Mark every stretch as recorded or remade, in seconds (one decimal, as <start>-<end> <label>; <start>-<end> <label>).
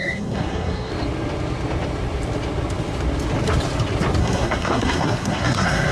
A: 0.0-0.9 remade; 0.9-4.2 recorded; 4.2-5.9 remade